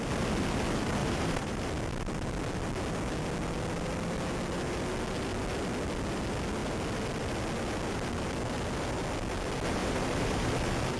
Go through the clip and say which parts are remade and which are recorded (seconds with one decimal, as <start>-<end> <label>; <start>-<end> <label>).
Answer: 0.0-1.0 recorded; 1.0-1.7 remade; 1.7-9.8 recorded; 9.8-10.5 remade; 10.5-11.0 recorded